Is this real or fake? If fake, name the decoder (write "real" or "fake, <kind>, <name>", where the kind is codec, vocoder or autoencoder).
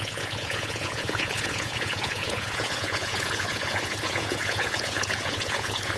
fake, vocoder, Vocos